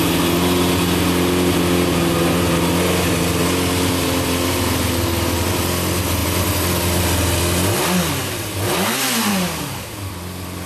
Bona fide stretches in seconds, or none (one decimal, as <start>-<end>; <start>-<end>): 0.0-9.3; 10.1-10.7